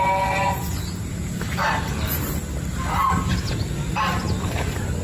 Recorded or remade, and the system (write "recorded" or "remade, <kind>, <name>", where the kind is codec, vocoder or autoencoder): recorded